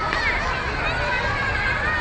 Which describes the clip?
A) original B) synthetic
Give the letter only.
A